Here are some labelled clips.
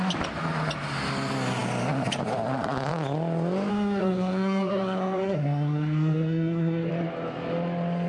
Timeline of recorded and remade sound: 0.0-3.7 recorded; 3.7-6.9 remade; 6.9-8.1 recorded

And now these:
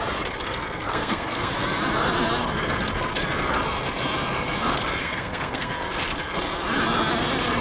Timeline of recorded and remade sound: 0.0-0.9 recorded; 0.9-1.5 remade; 1.5-5.0 recorded; 5.0-5.7 remade; 5.7-7.6 recorded

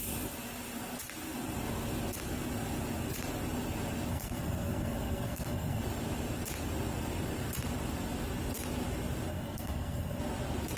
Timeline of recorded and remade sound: 0.0-4.1 recorded; 4.1-5.8 remade; 5.8-9.3 recorded; 9.3-10.2 remade; 10.2-10.8 recorded

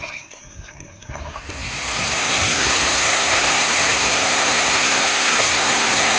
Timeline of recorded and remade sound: 0.0-6.2 remade

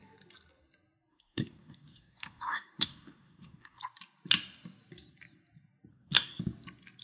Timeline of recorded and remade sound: 0.0-1.1 recorded; 1.1-3.8 remade; 3.8-5.9 recorded; 5.9-6.4 remade; 6.4-7.0 recorded